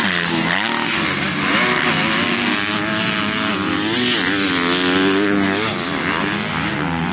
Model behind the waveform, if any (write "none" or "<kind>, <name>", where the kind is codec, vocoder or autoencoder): none